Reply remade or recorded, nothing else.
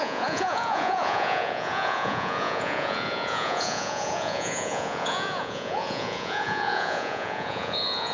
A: remade